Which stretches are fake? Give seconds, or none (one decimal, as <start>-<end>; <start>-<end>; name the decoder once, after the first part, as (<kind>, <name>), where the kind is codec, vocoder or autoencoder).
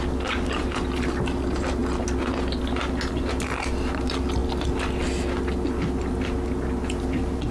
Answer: none